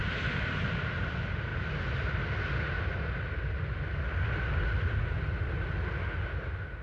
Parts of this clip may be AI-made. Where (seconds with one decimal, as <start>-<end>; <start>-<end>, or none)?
none